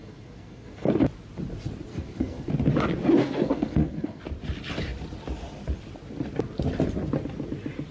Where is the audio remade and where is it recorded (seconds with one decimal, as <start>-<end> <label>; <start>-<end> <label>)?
0.0-1.0 remade; 1.0-1.9 recorded; 1.9-2.5 remade; 2.5-3.2 recorded; 3.2-4.2 remade; 4.2-7.9 recorded